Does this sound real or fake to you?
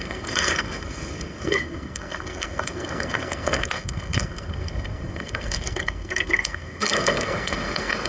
fake